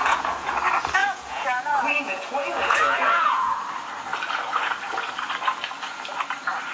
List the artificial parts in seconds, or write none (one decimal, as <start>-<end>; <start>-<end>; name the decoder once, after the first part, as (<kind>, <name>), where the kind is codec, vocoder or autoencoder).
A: 0.0-0.5 (vocoder, Vocos); 1.0-3.5